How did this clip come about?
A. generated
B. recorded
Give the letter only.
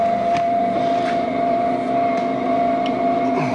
A